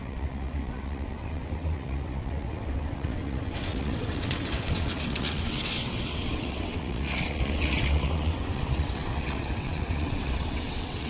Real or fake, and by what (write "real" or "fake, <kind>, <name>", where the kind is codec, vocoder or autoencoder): fake, vocoder, WaveNeXt